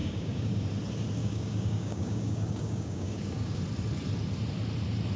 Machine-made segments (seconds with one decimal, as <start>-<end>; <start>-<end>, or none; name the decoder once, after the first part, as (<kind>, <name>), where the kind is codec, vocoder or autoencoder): 0.0-0.6 (codec, DAC); 1.2-3.6

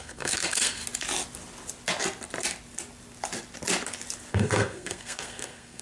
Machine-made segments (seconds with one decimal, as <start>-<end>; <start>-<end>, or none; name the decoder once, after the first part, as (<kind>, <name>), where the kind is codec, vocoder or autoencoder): 0.0-0.8 (codec, SNAC); 4.3-5.8

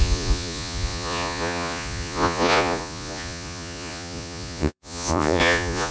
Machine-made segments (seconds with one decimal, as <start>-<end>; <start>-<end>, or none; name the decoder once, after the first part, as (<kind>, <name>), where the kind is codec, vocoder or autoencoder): 0.0-5.9 (vocoder, Vocos)